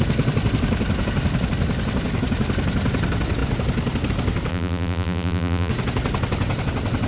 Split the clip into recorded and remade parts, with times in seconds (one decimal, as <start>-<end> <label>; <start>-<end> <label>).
0.0-4.5 recorded; 4.5-5.7 remade; 5.7-7.1 recorded

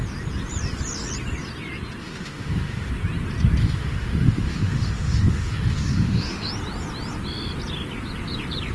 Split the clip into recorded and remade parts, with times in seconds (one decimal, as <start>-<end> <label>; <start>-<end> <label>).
0.0-2.0 recorded; 2.0-2.9 remade; 2.9-3.6 recorded; 3.6-6.5 remade; 6.5-8.7 recorded

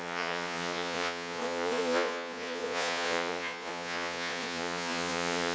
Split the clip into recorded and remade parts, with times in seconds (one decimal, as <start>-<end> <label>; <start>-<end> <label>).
0.0-5.5 remade